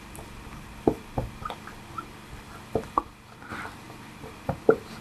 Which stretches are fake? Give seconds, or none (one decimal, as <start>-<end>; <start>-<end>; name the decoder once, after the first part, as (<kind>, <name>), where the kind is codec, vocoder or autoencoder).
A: none